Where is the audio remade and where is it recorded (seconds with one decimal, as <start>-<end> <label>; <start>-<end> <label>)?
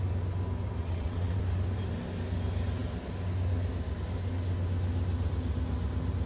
0.0-0.8 recorded; 0.8-1.4 remade; 1.4-6.3 recorded